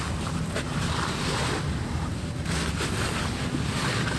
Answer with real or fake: real